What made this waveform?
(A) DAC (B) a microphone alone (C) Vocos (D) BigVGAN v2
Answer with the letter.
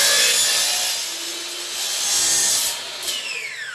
B